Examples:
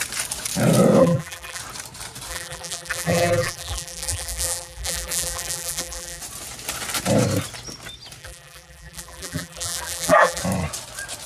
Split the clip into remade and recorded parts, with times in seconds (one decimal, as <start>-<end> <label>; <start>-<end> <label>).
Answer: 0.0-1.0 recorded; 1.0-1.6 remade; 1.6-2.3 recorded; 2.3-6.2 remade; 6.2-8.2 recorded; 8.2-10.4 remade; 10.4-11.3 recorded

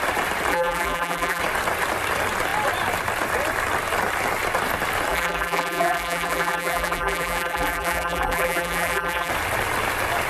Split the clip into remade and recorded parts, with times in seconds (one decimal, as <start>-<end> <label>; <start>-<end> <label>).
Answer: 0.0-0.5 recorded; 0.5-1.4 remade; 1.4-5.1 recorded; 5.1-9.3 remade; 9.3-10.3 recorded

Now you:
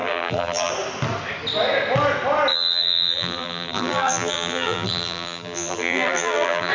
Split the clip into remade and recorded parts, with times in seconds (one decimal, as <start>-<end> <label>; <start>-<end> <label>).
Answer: 0.0-0.7 remade; 0.7-2.5 recorded; 2.5-6.7 remade

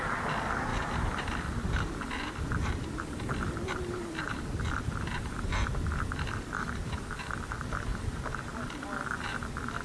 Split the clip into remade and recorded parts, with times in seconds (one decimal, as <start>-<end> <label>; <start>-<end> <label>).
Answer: 0.0-5.1 recorded; 5.1-7.1 remade; 7.1-7.9 recorded; 7.9-8.5 remade; 8.5-9.8 recorded

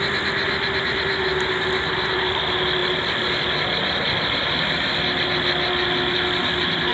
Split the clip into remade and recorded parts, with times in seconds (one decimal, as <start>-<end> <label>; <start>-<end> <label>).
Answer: 0.0-6.9 recorded